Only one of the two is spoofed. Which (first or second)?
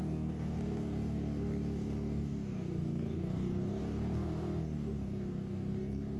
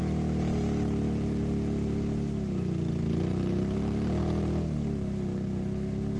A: first